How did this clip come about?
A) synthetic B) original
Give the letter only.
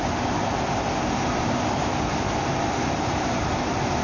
B